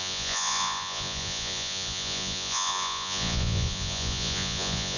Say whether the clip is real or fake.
fake